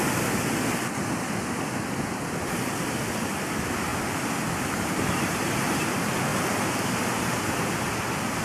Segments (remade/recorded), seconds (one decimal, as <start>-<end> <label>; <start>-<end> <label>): 0.0-8.4 recorded